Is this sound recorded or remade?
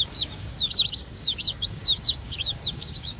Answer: remade